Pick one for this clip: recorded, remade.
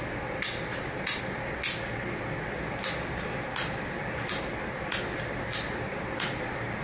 recorded